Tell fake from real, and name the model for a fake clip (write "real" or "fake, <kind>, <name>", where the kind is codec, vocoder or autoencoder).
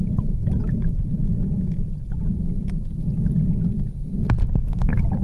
fake, vocoder, Vocos